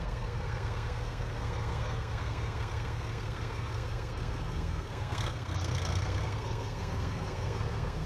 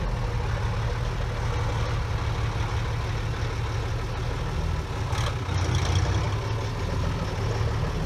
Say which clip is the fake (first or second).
first